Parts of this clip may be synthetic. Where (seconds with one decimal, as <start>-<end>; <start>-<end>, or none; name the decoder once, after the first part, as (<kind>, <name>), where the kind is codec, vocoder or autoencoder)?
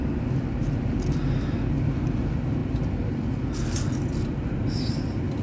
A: none